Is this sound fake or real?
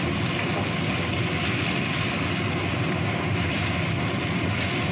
real